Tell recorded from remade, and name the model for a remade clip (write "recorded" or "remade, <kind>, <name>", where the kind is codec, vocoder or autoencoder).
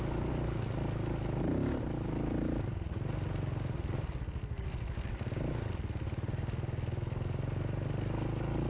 recorded